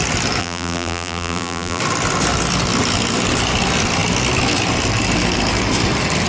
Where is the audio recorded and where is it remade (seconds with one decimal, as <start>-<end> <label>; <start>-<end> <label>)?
0.0-0.4 recorded; 0.4-1.8 remade; 1.8-6.3 recorded